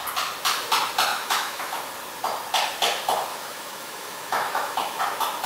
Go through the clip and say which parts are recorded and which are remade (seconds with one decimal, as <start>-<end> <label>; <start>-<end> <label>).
0.0-1.1 recorded; 1.1-1.8 remade; 1.8-3.3 recorded; 3.3-5.0 remade; 5.0-5.5 recorded